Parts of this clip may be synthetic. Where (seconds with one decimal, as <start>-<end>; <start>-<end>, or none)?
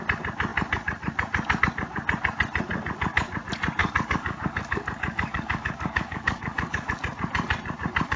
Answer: 3.8-6.9